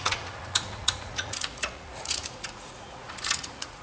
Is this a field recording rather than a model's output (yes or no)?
no